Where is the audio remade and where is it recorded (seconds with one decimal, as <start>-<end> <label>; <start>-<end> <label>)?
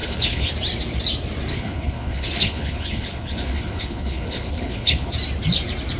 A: 0.0-0.5 remade; 0.5-1.5 recorded; 1.5-5.1 remade; 5.1-6.0 recorded